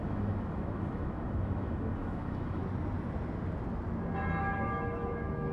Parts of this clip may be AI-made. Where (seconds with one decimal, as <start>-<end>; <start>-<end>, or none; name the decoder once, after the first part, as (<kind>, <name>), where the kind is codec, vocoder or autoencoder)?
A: 0.0-2.6 (autoencoder, DAC-VAE); 4.4-5.5